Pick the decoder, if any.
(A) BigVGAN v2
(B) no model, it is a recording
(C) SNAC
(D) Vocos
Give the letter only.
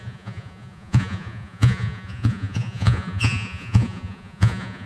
D